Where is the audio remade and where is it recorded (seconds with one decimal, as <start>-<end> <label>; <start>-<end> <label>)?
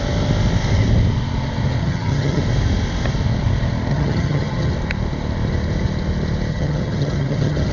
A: 0.0-1.8 recorded; 1.8-2.4 remade; 2.4-3.9 recorded; 3.9-4.7 remade; 4.7-6.5 recorded; 6.5-7.7 remade